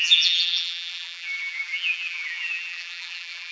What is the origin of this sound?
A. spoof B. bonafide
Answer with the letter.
A